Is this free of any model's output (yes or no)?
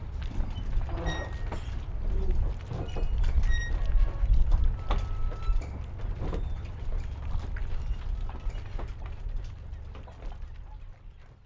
yes